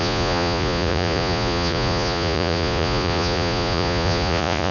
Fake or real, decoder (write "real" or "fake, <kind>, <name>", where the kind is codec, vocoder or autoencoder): fake, vocoder, Vocos